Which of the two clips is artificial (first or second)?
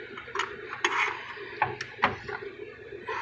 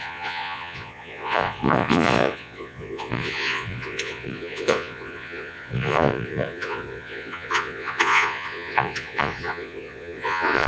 second